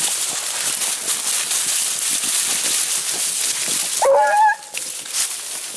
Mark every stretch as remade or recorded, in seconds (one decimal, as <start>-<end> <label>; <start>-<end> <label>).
0.0-5.8 recorded